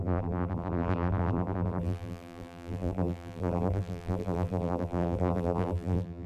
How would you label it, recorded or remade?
remade